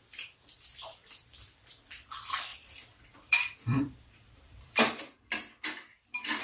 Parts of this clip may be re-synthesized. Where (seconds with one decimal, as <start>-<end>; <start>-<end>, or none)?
0.0-6.4